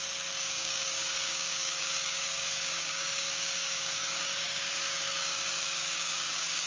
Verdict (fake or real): fake